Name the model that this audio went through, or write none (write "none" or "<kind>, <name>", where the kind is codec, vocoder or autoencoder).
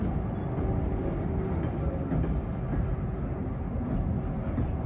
none